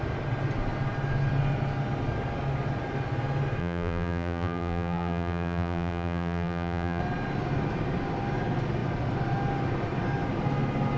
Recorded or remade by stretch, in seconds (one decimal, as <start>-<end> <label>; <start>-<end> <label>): 0.0-3.6 recorded; 3.6-7.0 remade; 7.0-11.0 recorded